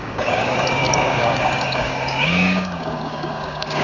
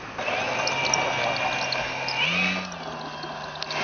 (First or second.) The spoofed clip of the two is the first